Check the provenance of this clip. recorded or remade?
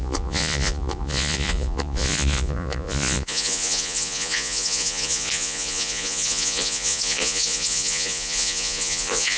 remade